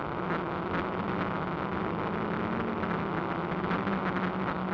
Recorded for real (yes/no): yes